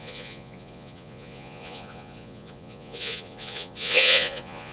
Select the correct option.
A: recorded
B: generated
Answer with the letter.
B